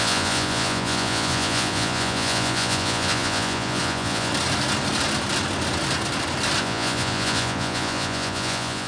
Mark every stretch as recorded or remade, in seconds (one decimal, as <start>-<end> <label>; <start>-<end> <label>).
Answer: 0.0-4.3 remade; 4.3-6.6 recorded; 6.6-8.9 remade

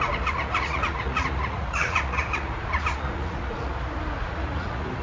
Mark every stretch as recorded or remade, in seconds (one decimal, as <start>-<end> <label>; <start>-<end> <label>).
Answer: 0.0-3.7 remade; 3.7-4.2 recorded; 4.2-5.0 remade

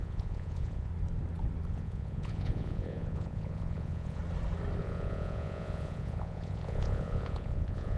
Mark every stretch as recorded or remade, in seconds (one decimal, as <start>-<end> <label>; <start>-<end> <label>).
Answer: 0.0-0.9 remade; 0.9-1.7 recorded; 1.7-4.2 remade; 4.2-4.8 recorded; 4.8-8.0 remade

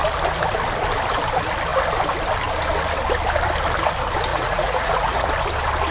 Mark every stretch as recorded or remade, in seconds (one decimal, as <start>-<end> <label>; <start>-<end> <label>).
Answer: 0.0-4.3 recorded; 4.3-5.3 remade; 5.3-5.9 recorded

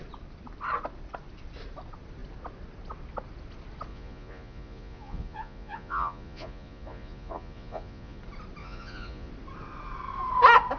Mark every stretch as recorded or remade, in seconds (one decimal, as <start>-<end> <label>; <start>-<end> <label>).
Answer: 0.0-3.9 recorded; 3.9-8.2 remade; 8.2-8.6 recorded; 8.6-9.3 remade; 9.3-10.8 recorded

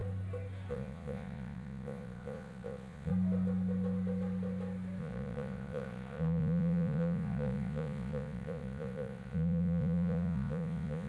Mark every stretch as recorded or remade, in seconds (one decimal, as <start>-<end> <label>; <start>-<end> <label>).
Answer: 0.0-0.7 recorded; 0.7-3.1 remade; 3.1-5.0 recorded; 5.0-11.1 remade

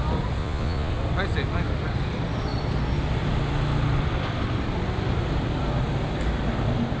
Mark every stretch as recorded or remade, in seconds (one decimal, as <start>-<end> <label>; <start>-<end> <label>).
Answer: 0.0-0.4 recorded; 0.4-0.9 remade; 0.9-7.0 recorded